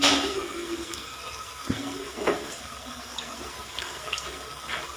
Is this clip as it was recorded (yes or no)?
no